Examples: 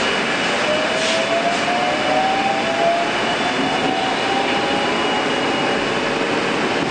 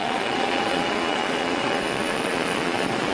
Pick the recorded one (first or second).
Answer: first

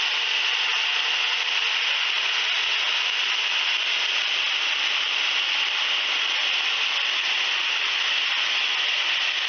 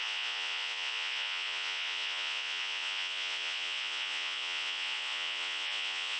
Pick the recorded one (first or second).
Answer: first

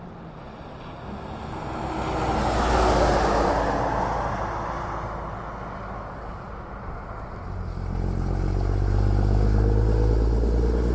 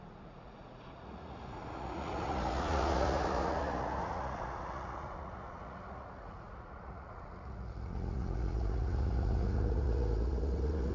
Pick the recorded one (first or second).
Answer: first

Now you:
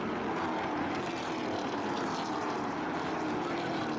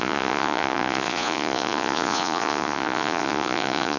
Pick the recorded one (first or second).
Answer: first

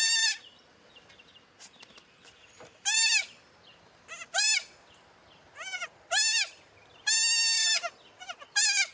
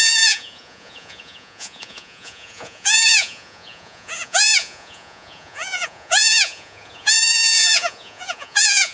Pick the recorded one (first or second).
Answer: first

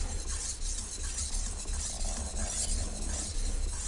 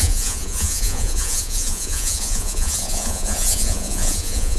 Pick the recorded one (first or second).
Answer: first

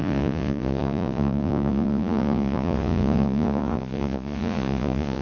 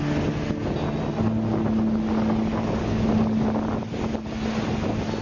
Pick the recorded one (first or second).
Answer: second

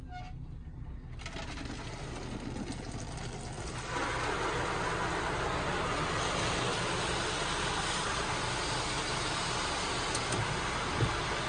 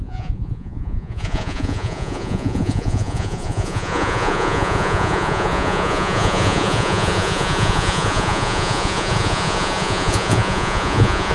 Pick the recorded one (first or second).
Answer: first